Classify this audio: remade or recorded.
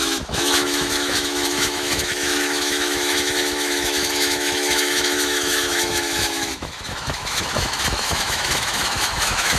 remade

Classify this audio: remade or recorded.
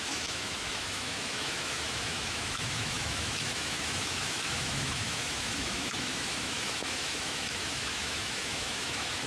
remade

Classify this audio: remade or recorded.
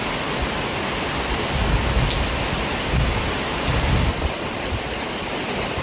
recorded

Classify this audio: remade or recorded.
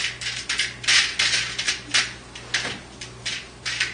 recorded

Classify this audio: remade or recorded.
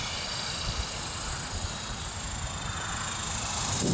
recorded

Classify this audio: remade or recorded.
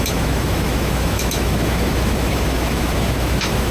remade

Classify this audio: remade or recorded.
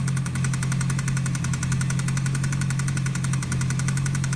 remade